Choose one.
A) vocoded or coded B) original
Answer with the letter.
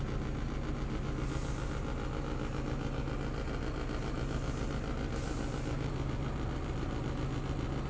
B